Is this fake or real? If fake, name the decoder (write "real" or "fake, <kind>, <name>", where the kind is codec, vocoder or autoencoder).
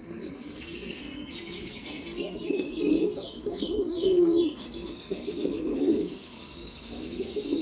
fake, codec, SNAC